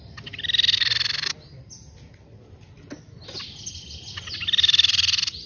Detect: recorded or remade recorded